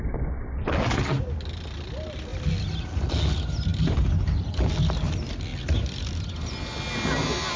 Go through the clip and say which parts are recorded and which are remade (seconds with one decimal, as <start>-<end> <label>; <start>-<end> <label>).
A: 0.0-3.7 recorded; 3.7-4.7 remade; 4.7-7.6 recorded